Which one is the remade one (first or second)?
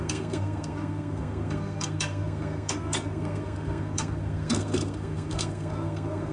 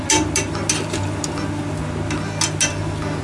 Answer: first